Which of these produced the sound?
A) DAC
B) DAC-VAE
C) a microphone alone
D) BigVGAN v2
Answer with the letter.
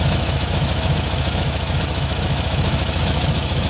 B